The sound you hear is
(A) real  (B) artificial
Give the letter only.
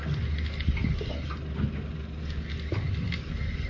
A